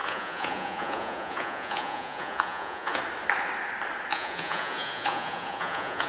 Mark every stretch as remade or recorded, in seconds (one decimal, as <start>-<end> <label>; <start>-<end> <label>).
0.0-3.0 remade; 3.0-4.1 recorded; 4.1-6.1 remade